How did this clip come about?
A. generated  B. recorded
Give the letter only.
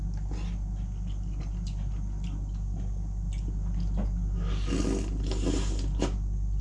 B